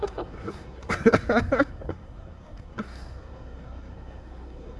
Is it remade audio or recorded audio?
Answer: remade